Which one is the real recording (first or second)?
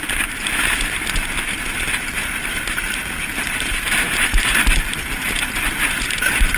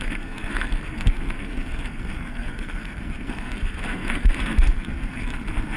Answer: first